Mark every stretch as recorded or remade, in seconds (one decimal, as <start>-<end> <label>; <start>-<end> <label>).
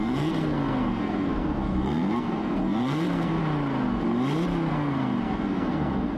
0.0-3.4 remade; 3.4-4.7 recorded; 4.7-6.2 remade